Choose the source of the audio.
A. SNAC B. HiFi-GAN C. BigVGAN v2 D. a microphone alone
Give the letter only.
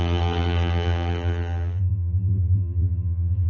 C